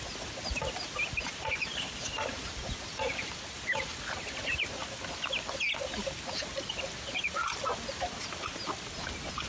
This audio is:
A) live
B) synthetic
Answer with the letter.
A